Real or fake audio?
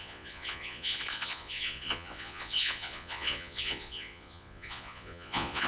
fake